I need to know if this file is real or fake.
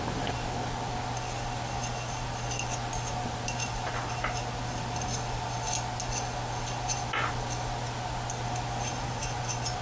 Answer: real